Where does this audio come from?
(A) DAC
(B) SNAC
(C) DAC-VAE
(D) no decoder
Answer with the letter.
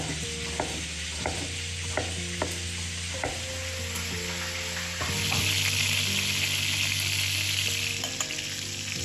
D